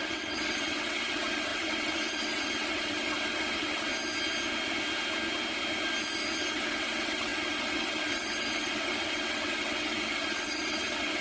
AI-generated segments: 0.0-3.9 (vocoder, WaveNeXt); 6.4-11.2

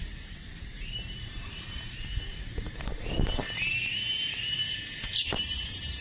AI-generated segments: 0.0-6.0 (vocoder, BigVGAN v2)

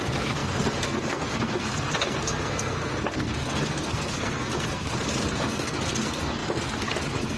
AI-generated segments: 0.0-7.4 (codec, SNAC)

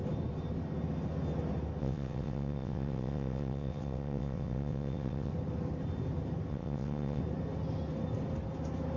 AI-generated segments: 1.8-5.3 (vocoder, WaveNeXt); 6.5-7.2

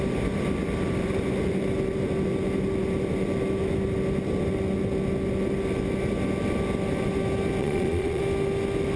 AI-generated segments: 7.6-8.2 (vocoder, Vocos)

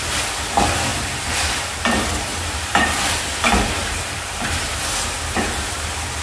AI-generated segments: 0.9-1.8 (vocoder, BigVGAN v2); 2.3-2.9; 3.8-4.7

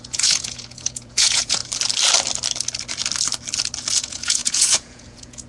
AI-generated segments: 0.0-1.6 (vocoder, Vocos); 4.0-5.5

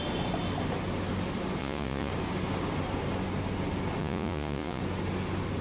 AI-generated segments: 1.6-2.1 (vocoder, Vocos); 4.0-4.8